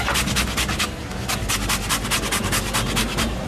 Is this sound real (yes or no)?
yes